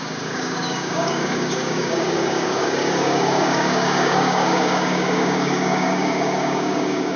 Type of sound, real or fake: fake